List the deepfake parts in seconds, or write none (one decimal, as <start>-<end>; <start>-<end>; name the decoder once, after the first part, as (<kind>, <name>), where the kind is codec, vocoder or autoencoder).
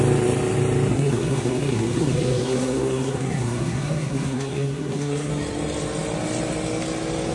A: 0.9-5.3 (codec, SNAC)